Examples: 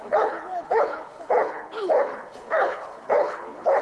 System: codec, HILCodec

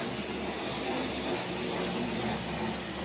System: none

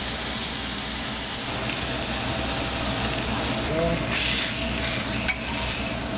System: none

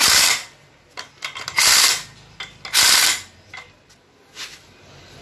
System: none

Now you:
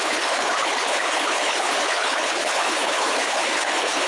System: codec, HILCodec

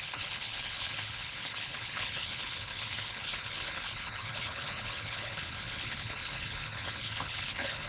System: codec, HILCodec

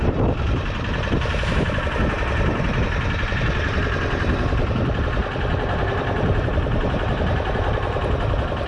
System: none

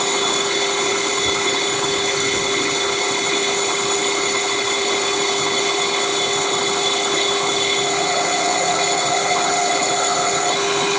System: codec, HILCodec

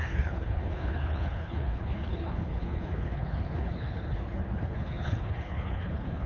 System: codec, HILCodec